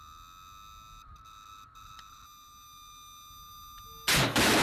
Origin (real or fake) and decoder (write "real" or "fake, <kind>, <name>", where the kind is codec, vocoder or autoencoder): real